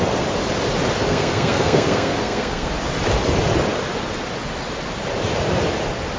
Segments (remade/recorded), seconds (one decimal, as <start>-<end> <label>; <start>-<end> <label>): 0.0-1.1 recorded; 1.1-2.7 remade; 2.7-6.2 recorded